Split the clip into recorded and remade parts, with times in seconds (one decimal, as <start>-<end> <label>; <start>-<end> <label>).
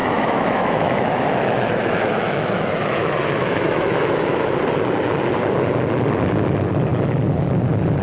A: 0.0-4.6 remade; 4.6-8.0 recorded